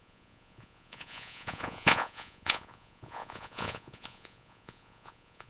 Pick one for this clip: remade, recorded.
remade